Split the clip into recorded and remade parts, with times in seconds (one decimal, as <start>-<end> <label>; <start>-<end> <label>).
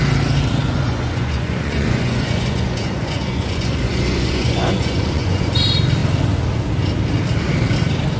0.0-0.6 recorded; 0.6-5.5 remade; 5.5-8.2 recorded